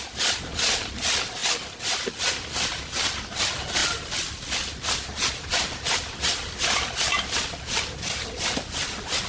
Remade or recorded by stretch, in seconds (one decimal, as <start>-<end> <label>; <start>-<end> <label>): 0.0-9.3 recorded